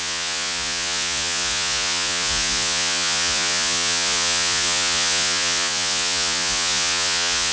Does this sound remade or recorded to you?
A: remade